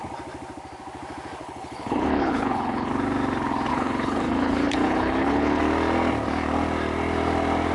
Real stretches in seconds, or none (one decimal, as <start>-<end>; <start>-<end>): 0.0-1.4; 2.9-3.7; 5.6-7.7